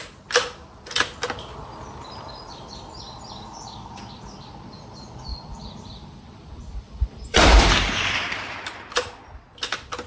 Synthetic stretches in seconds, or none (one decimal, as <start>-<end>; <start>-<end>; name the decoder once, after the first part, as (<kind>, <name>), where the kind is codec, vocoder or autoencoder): 5.3-7.6 (vocoder, BigVGAN v2)